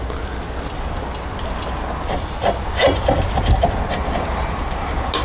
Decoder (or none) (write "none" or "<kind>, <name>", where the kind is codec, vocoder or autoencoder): none